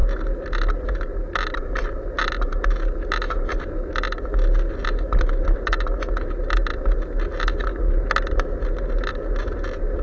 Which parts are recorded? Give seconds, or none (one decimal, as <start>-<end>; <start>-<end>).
0.0-10.0